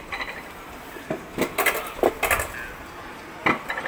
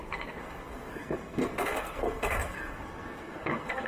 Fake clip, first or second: second